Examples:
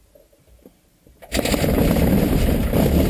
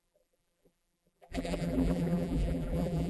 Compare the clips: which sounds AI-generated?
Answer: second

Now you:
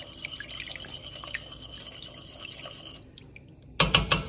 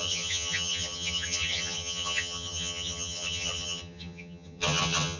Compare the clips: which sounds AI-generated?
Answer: second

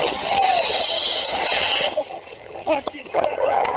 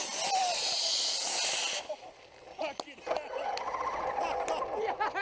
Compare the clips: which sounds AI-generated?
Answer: first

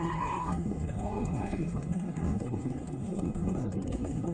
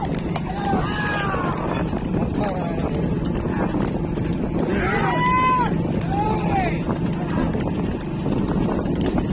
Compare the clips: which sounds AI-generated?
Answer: first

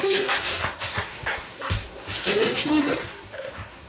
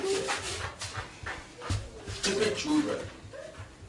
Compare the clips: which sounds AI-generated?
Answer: first